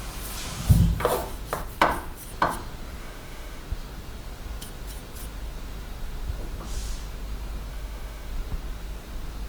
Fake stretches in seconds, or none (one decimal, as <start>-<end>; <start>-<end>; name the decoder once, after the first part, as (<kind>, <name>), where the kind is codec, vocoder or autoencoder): 3.0-3.6 (autoencoder, DAC-VAE); 7.7-8.3